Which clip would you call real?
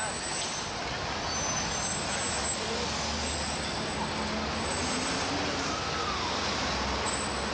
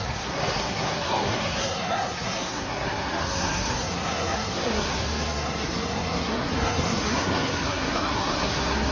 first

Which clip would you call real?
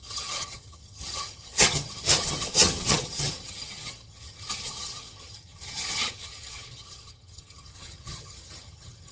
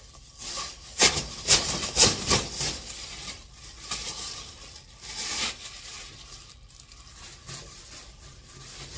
second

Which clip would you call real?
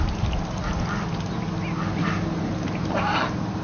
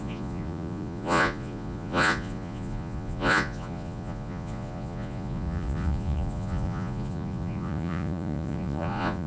first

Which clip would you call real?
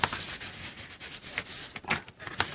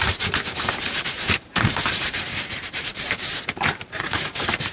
first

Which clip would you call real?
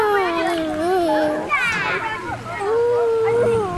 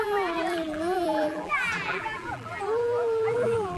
first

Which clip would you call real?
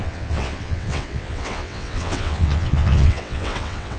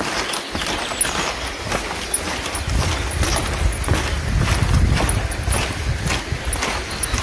second